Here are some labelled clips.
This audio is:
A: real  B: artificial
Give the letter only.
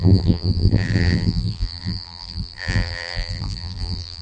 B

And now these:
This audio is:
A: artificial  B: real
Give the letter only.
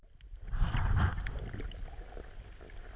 B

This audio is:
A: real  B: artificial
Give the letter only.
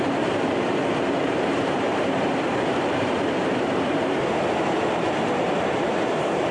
B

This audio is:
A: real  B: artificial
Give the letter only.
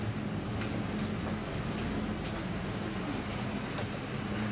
A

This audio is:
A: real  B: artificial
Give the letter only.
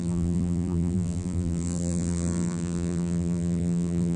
B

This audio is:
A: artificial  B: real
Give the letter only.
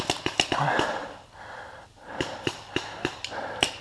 A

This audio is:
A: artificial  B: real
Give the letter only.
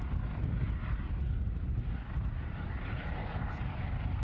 B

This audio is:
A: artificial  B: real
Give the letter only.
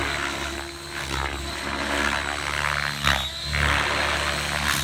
B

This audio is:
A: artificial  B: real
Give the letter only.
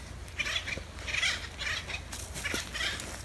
B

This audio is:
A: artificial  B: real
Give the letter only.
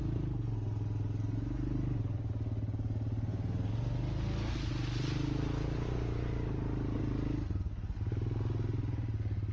B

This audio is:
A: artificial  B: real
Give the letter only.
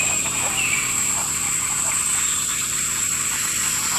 A